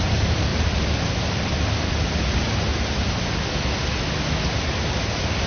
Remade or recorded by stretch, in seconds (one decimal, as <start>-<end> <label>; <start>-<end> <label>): 0.0-0.5 remade; 0.5-2.2 recorded; 2.2-2.7 remade; 2.7-5.5 recorded